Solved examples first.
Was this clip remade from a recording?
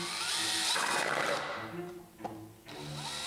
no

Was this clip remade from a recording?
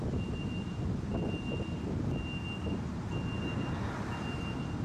no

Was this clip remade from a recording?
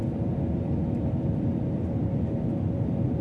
yes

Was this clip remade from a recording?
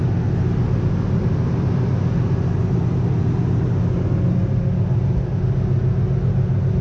no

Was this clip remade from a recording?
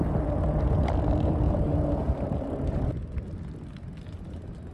no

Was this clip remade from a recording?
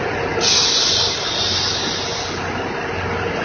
no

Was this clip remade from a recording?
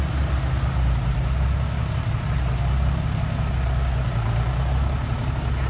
no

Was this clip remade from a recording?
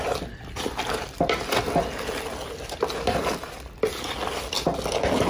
no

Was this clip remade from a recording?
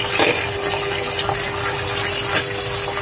no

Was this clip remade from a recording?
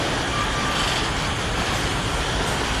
yes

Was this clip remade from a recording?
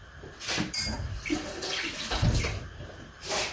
yes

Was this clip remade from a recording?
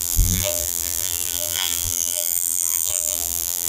yes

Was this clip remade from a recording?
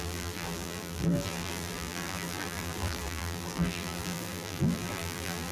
yes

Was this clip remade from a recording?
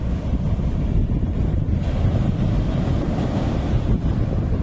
no